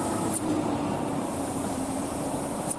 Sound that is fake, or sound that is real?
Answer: fake